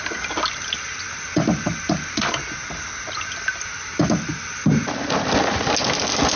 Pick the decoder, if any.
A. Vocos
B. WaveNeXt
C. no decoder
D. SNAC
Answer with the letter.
C